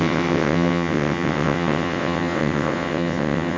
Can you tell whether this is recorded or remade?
remade